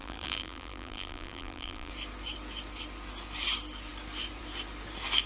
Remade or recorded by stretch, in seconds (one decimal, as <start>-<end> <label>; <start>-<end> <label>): 0.0-1.9 remade; 1.9-5.3 recorded